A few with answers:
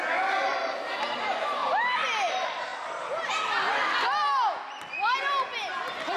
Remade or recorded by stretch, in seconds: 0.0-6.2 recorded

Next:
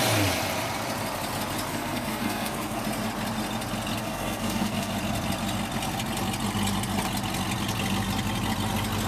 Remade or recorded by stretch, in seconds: 0.0-1.7 recorded; 1.7-2.8 remade; 2.8-4.0 recorded; 4.0-4.9 remade; 4.9-9.1 recorded